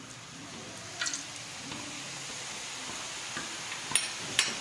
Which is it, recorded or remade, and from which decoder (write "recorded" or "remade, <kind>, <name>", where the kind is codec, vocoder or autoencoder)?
recorded